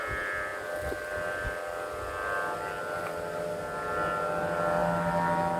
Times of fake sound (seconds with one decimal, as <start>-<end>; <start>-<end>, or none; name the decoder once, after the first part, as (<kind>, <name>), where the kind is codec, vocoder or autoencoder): none

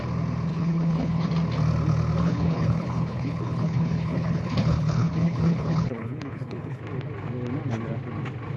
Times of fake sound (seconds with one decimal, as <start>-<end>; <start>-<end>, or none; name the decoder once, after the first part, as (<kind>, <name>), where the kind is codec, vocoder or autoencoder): 0.5-1.3 (codec, HILCodec); 2.2-6.8

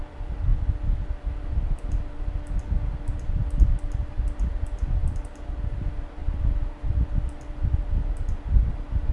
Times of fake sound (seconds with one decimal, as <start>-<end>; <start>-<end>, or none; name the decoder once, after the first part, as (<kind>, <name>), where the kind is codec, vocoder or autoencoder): 0.0-0.5 (vocoder, BigVGAN v2); 4.1-6.2; 8.4-9.1

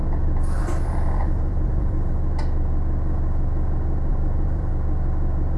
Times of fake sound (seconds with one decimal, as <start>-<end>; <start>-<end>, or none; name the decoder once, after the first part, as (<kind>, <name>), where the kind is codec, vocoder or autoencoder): 0.0-2.1 (vocoder, BigVGAN v2); 4.1-4.7